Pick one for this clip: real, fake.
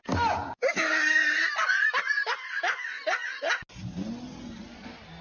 real